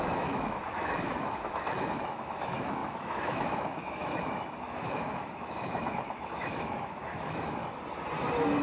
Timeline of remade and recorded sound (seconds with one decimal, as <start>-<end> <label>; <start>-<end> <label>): 0.0-7.6 remade; 7.6-8.6 recorded